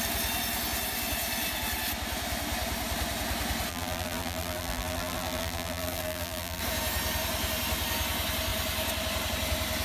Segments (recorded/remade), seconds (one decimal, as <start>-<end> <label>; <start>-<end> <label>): 0.0-3.7 recorded; 3.7-6.6 remade; 6.6-9.8 recorded